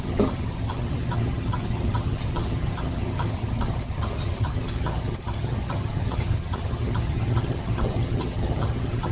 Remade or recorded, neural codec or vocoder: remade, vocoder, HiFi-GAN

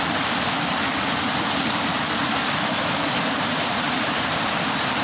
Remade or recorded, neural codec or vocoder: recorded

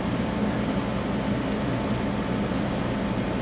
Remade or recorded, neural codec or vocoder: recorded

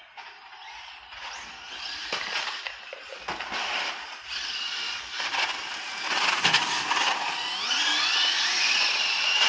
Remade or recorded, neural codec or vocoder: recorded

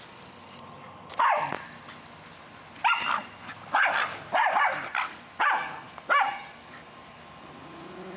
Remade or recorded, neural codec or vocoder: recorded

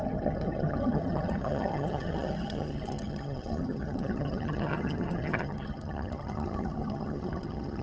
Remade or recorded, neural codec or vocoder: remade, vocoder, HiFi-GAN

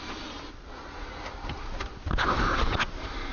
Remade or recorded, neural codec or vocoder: recorded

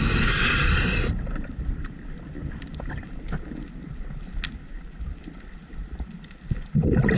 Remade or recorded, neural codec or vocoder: recorded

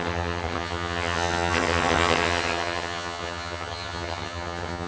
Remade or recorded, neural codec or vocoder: remade, vocoder, HiFi-GAN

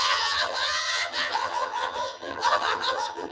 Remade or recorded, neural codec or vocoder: remade, vocoder, HiFi-GAN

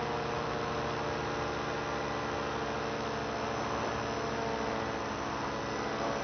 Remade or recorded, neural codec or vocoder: recorded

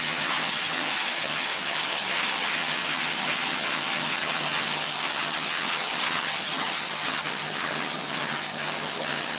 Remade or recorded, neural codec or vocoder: remade, vocoder, HiFi-GAN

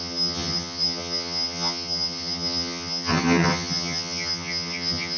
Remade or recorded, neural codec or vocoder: remade, vocoder, HiFi-GAN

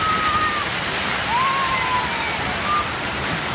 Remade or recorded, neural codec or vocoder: recorded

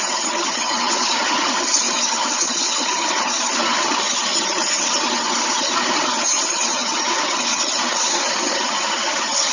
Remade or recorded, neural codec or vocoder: remade, vocoder, HiFi-GAN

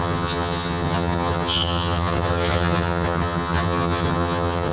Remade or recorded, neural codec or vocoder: remade, vocoder, HiFi-GAN